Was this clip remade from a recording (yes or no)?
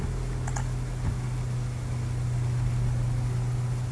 no